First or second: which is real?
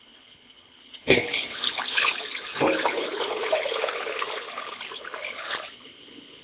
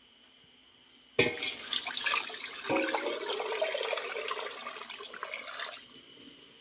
second